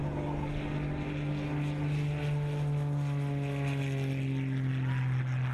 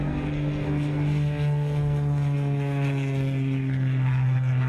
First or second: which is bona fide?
first